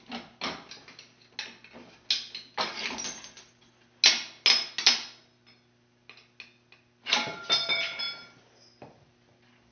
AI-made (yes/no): no